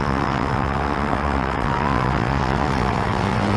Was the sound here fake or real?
fake